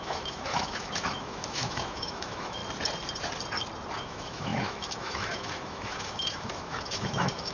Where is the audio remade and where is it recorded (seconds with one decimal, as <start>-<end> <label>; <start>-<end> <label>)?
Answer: 0.0-2.6 remade; 2.6-3.9 recorded; 3.9-7.5 remade